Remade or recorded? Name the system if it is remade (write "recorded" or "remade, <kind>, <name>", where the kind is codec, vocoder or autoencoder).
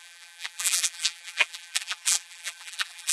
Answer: remade, vocoder, BigVGAN v2